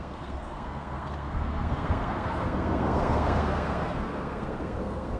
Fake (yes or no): yes